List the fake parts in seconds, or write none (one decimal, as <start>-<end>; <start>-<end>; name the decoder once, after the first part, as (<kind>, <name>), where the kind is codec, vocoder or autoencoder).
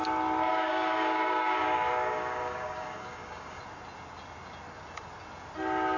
0.5-3.6 (codec, DAC)